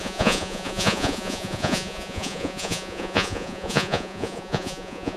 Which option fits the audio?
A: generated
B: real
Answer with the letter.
A